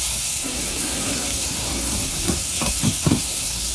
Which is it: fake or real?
fake